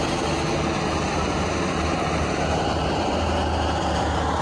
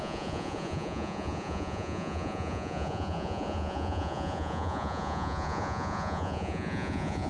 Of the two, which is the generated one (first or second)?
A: second